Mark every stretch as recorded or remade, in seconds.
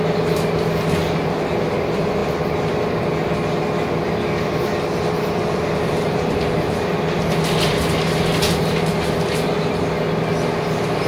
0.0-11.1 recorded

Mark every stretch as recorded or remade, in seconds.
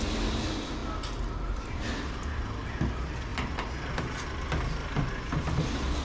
0.0-6.0 recorded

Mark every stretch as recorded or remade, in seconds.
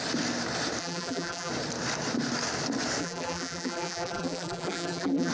0.0-0.8 recorded; 0.8-1.5 remade; 1.5-3.0 recorded; 3.0-5.3 remade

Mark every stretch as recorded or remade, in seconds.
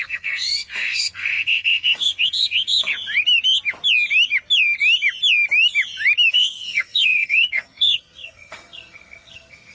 0.0-2.9 remade; 2.9-6.3 recorded; 6.3-9.7 remade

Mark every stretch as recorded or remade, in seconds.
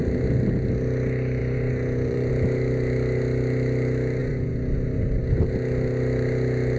0.0-1.4 recorded; 1.4-2.3 remade; 2.3-4.2 recorded; 4.2-5.0 remade; 5.0-6.8 recorded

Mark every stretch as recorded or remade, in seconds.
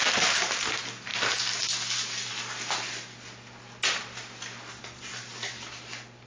0.0-6.3 recorded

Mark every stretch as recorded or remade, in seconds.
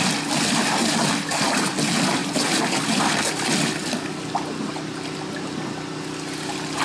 0.0-6.8 recorded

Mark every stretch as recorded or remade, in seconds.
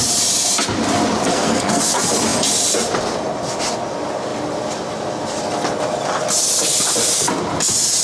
0.0-1.3 recorded; 1.3-1.8 remade; 1.8-8.0 recorded